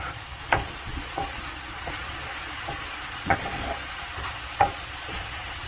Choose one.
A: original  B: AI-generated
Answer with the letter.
B